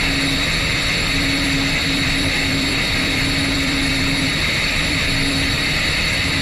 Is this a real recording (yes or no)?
no